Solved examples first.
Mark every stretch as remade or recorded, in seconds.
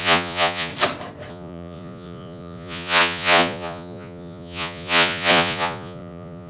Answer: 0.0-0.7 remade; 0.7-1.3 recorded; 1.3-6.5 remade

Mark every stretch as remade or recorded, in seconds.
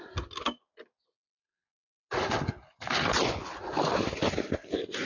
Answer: 0.0-5.1 recorded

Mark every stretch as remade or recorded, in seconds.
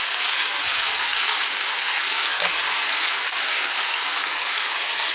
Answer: 0.0-5.1 remade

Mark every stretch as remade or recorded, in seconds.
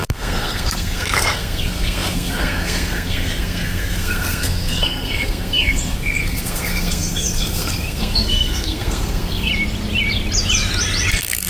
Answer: 0.0-9.5 remade; 9.5-11.1 recorded; 11.1-11.5 remade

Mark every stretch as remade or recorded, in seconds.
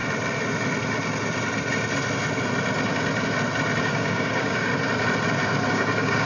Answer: 0.0-3.8 recorded; 3.8-4.7 remade; 4.7-5.7 recorded; 5.7-6.3 remade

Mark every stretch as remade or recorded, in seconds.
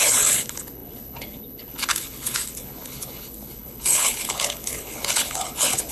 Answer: 0.0-5.9 remade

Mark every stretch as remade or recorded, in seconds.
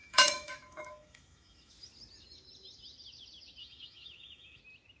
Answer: 0.0-1.7 remade; 1.7-3.6 recorded; 3.6-4.6 remade; 4.6-5.0 recorded